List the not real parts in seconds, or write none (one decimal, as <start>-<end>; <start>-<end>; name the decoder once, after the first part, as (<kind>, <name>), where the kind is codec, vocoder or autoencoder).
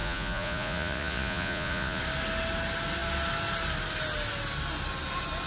0.0-2.0 (vocoder, Vocos)